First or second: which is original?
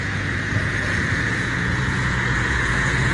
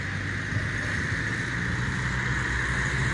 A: second